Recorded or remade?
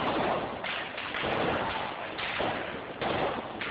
recorded